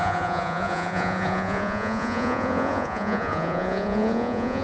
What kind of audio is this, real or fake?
fake